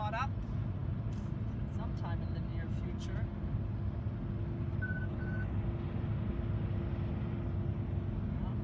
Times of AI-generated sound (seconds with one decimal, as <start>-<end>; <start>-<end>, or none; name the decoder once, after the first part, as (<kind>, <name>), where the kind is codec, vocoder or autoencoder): none